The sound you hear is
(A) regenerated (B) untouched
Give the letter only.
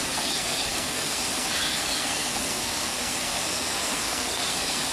A